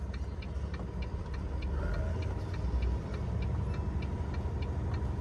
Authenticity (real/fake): real